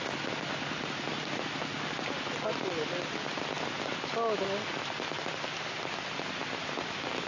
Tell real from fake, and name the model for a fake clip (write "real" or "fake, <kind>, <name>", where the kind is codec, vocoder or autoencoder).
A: real